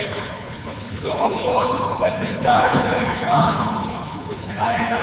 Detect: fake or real fake